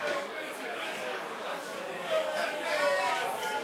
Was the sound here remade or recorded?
remade